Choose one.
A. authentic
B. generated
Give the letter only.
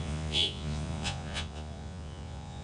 B